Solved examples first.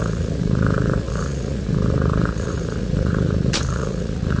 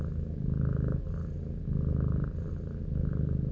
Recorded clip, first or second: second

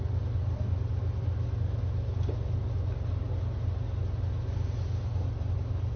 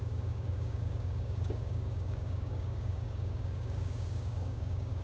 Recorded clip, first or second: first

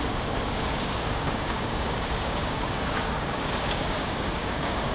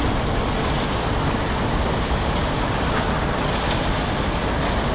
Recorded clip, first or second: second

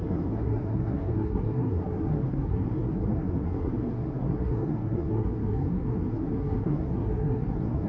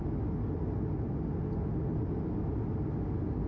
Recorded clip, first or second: second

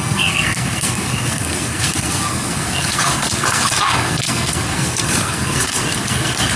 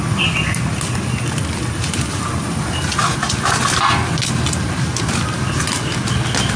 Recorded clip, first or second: second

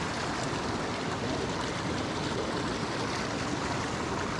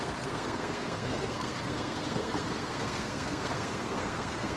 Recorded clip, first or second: first